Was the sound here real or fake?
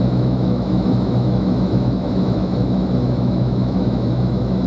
fake